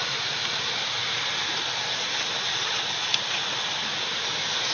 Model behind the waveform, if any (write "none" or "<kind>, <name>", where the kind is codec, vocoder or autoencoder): none